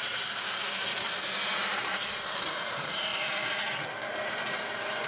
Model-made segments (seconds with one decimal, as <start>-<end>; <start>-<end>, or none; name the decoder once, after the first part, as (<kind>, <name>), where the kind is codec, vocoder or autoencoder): 0.0-3.1 (vocoder, BigVGAN v2); 4.3-5.1